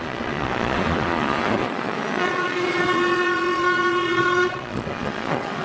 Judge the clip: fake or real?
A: fake